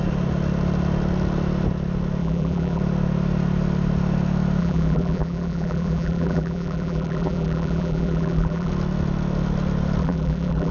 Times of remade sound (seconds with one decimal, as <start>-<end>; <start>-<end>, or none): 2.2-2.8; 4.6-8.7; 10.0-10.7